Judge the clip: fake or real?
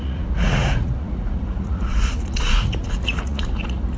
fake